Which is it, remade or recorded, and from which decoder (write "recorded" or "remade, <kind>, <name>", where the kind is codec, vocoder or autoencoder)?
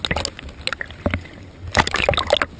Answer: recorded